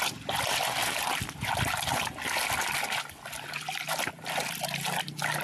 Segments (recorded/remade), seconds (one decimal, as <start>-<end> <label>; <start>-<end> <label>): 0.0-5.4 recorded

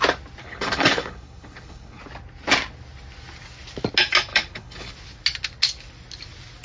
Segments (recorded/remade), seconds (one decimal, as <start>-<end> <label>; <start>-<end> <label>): 0.0-0.4 recorded; 0.4-2.0 remade; 2.0-4.3 recorded; 4.3-4.9 remade; 4.9-6.6 recorded